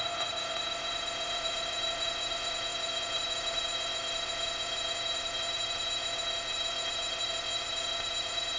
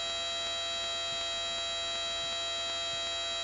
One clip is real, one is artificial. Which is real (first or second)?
second